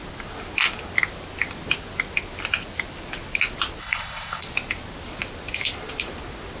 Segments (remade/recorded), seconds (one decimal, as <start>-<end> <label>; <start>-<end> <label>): 0.0-3.8 recorded; 3.8-4.4 remade; 4.4-6.6 recorded